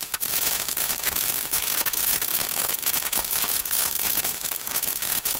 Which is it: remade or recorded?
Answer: remade